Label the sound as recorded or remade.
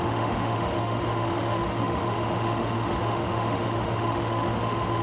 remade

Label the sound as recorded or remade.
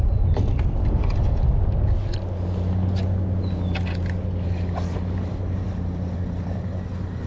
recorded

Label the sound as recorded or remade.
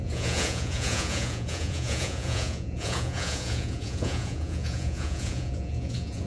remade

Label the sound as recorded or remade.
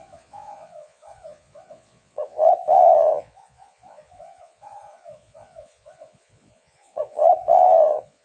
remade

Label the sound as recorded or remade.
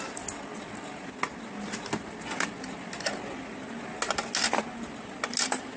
recorded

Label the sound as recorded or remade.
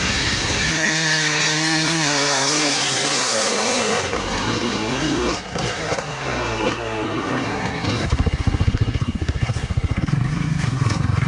remade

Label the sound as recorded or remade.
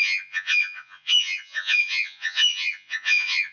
remade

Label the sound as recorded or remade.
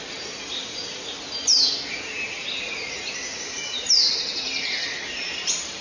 remade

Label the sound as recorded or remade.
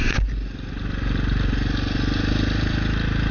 recorded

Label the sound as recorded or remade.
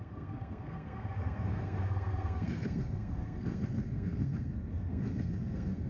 remade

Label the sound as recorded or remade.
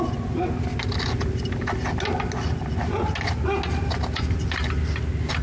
recorded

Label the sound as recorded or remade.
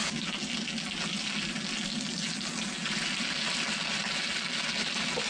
recorded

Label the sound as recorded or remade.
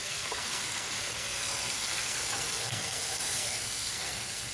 remade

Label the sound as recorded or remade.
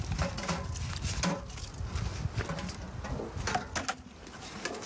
recorded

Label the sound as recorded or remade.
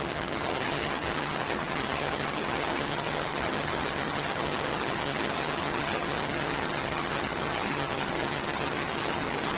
remade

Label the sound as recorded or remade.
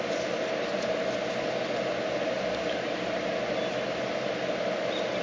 recorded